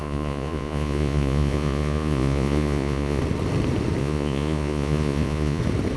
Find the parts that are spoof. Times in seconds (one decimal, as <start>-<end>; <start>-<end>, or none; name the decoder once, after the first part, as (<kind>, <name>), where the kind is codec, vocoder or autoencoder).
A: 0.0-3.2 (vocoder, Vocos); 4.0-5.6